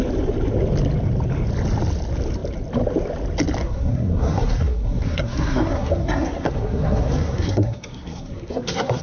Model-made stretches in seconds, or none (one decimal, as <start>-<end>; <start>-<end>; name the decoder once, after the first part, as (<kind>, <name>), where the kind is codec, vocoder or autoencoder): 3.6-9.0 (codec, SNAC)